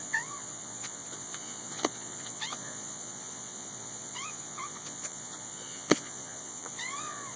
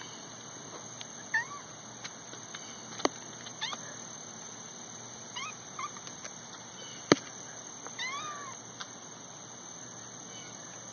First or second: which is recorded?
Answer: second